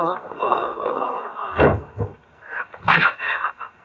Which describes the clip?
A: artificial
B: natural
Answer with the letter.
A